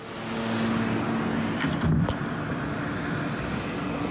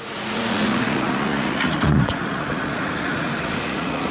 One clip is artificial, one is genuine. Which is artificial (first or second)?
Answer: second